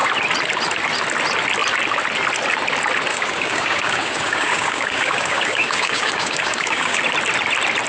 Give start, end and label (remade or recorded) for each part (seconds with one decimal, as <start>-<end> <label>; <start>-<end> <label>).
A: 0.0-3.1 recorded; 3.1-7.0 remade; 7.0-7.9 recorded